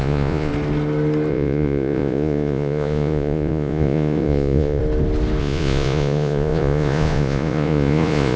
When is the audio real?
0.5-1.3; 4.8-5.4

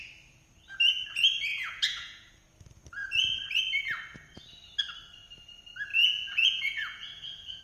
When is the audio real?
0.0-1.5; 2.3-5.9

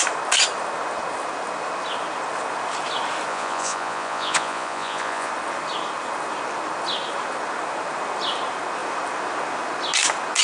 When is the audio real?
0.0-3.3; 5.3-10.4

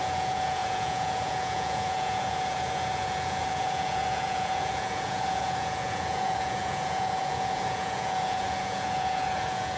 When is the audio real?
none

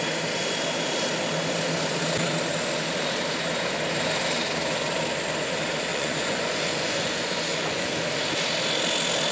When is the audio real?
0.0-5.9; 7.9-9.3

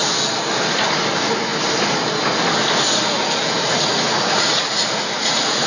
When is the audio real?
0.0-3.6